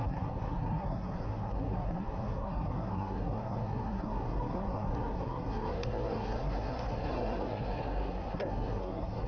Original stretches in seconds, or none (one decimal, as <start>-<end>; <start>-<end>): none